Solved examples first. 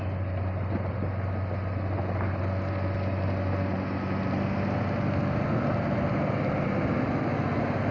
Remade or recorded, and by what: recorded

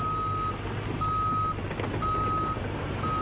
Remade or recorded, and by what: recorded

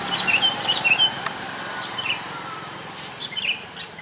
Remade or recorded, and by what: remade, vocoder, BigVGAN v2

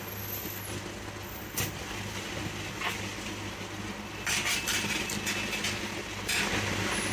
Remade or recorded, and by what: recorded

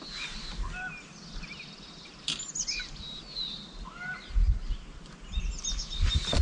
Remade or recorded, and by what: recorded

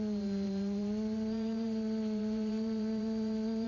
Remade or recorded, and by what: remade, vocoder, BigVGAN v2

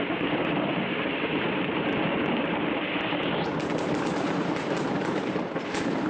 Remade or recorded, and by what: remade, vocoder, BigVGAN v2